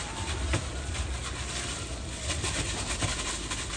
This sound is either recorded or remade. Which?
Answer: recorded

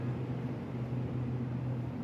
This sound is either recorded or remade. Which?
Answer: recorded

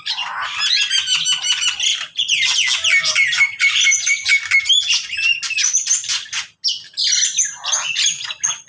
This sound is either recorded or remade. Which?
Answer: recorded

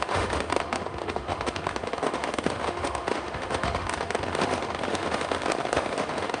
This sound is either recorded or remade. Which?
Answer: remade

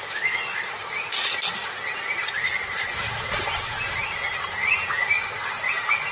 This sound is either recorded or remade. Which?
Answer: recorded